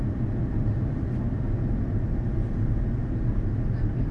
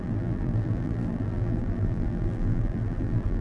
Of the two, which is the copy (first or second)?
second